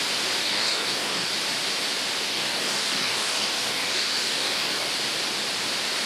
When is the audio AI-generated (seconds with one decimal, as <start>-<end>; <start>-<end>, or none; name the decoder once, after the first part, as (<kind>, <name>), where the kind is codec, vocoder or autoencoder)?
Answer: 0.4-1.3 (codec, DAC); 2.2-4.9